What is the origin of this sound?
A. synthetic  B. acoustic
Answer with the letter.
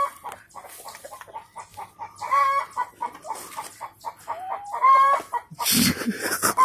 B